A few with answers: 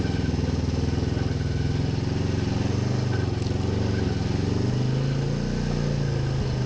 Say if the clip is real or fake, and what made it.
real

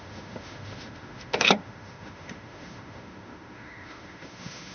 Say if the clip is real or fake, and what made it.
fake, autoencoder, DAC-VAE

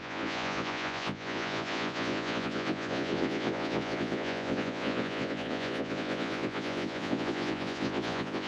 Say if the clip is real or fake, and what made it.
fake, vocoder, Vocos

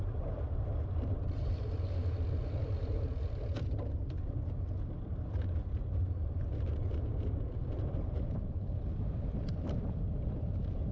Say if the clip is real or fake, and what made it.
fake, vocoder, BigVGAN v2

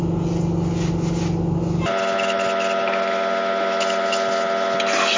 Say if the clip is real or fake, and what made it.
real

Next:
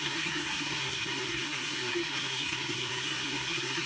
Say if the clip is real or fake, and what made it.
fake, codec, SNAC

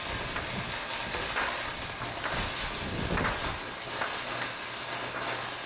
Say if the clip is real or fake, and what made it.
real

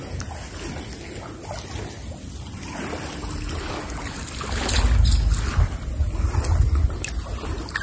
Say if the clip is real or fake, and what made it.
real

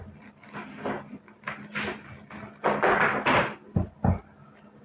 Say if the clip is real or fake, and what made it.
real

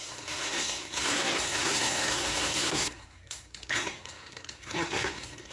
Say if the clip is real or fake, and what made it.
fake, codec, SNAC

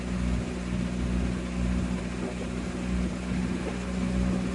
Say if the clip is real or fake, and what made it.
real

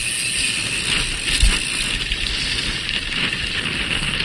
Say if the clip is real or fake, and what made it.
real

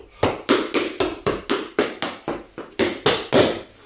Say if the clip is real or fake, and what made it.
real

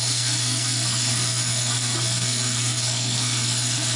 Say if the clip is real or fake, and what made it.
fake, codec, SNAC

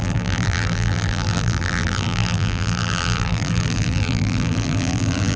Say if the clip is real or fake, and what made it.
fake, vocoder, BigVGAN v2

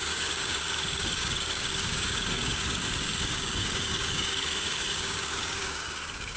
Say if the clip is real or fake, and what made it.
fake, codec, DAC